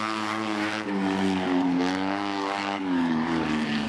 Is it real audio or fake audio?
fake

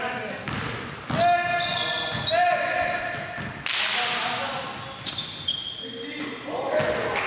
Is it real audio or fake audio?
real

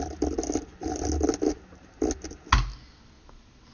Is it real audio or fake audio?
real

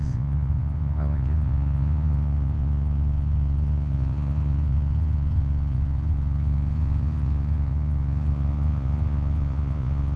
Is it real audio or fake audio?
fake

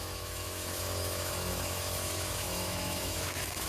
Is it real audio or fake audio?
fake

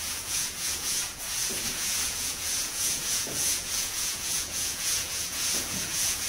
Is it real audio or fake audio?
fake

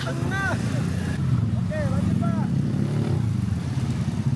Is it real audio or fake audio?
real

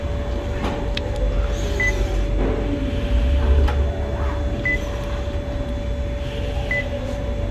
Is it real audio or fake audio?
real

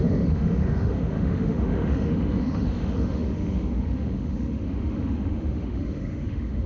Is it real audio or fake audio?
fake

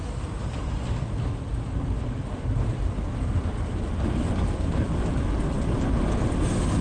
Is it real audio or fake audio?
real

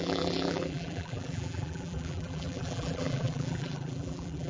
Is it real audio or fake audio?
fake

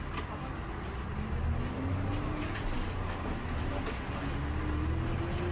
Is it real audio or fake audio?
real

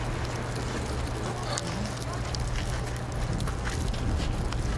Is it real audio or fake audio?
real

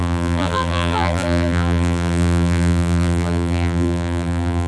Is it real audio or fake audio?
fake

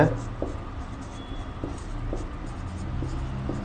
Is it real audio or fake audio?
real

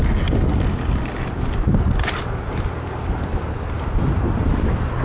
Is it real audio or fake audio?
real